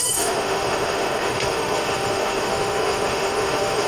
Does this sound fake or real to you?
fake